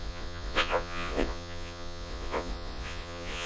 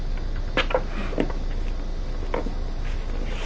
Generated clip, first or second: first